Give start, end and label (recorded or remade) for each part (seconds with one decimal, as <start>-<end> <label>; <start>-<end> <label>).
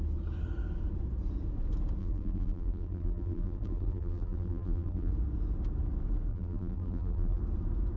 0.0-2.0 recorded; 2.0-5.1 remade; 5.1-6.3 recorded; 6.3-7.4 remade; 7.4-8.0 recorded